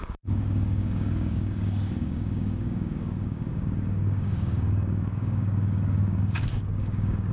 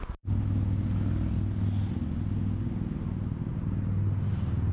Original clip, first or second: second